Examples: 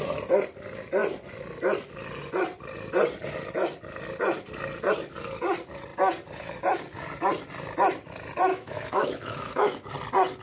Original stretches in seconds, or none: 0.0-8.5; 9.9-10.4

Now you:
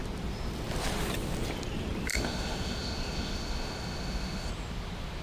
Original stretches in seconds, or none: 0.0-2.1; 4.5-5.2